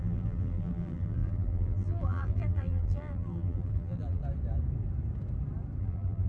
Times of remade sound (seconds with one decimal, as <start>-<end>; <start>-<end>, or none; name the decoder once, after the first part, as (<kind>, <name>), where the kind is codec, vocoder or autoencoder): 0.0-4.2 (vocoder, BigVGAN v2); 5.8-6.3